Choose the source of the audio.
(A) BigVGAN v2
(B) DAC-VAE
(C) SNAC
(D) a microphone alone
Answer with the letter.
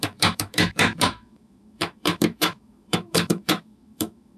B